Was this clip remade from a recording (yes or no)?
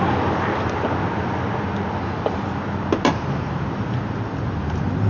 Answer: no